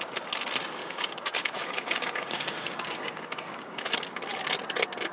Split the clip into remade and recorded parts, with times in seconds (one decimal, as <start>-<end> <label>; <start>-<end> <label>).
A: 0.0-0.8 recorded; 0.8-3.9 remade; 3.9-5.1 recorded